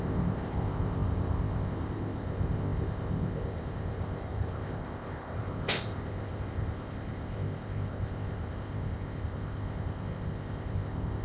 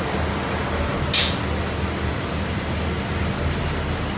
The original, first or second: second